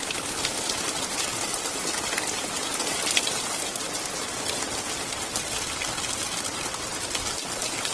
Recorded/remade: recorded